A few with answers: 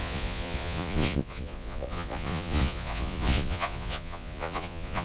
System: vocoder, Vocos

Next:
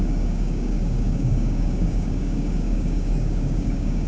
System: codec, DAC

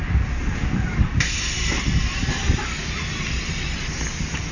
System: none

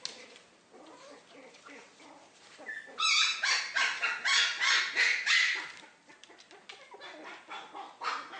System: none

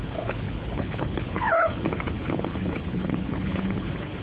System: codec, HILCodec